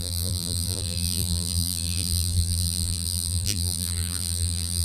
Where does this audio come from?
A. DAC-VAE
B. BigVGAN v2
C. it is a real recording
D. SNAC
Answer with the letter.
B